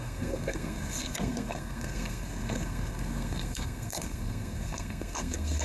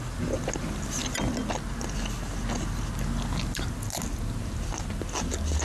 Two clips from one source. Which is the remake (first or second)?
first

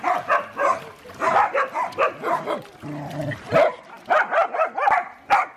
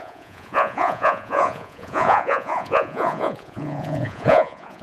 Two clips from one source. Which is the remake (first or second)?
second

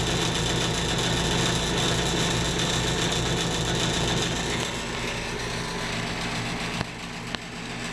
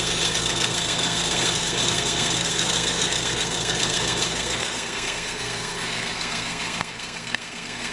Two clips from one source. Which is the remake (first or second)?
second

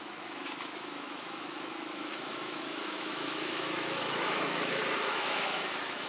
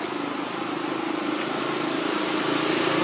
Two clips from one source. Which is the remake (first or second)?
first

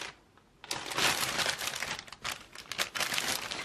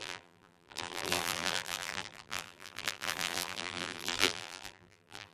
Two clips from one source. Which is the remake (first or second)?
second